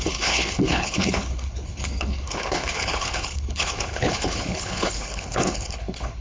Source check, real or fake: fake